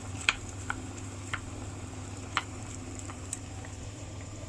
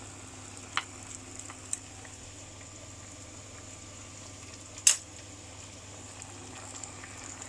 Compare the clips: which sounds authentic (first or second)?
second